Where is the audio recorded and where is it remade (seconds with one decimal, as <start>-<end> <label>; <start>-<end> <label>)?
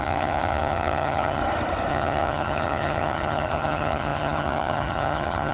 0.0-1.4 remade; 1.4-1.9 recorded; 1.9-5.5 remade